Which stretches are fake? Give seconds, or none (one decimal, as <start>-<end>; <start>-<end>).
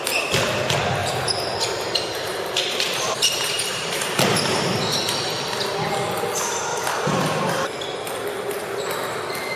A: 1.0-4.8; 6.7-7.4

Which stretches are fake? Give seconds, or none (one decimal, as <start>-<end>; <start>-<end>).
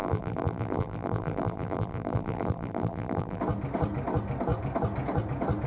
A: 0.0-3.4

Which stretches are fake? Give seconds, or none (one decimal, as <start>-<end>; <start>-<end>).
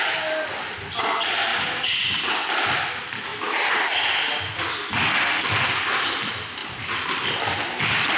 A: 1.5-2.9; 6.6-7.4